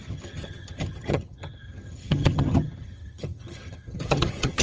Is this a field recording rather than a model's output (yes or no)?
no